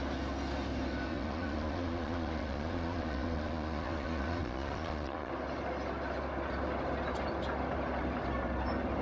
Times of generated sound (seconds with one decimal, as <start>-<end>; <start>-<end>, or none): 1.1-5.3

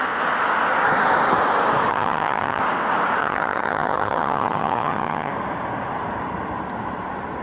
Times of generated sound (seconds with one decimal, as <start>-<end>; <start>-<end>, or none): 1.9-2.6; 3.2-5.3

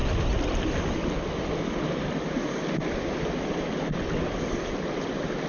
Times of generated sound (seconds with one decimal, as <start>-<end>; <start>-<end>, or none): none